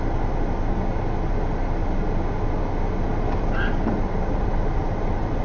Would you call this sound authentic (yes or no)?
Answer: yes